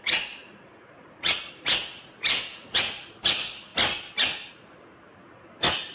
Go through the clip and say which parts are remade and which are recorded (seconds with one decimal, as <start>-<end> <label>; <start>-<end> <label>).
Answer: 0.0-3.7 remade; 3.7-4.5 recorded; 4.5-4.9 remade; 4.9-5.9 recorded